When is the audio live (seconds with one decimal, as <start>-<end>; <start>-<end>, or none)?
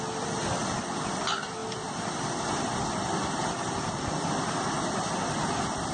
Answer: 0.0-0.6; 1.2-1.6; 4.7-5.9